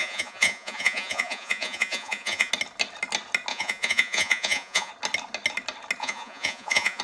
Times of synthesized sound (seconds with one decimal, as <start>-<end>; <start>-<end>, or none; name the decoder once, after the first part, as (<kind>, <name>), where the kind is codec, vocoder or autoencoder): 0.0-2.5 (vocoder, Vocos); 3.5-4.9; 6.0-7.0